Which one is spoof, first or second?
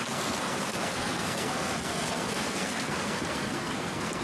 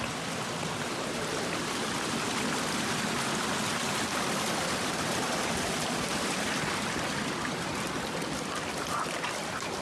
first